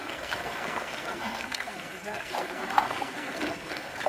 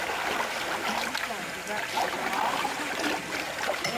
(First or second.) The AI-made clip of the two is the first